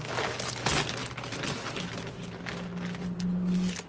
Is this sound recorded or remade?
recorded